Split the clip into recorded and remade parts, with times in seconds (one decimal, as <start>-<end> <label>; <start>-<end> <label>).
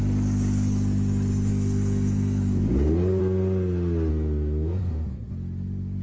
0.0-1.5 recorded; 1.5-3.2 remade; 3.2-4.1 recorded; 4.1-5.3 remade; 5.3-6.0 recorded